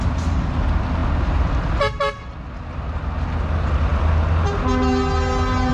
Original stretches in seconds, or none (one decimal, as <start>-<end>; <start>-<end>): 0.0-5.7